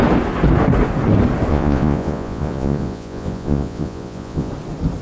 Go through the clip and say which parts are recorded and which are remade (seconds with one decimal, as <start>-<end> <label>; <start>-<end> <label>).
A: 0.0-1.5 recorded; 1.5-4.5 remade; 4.5-5.0 recorded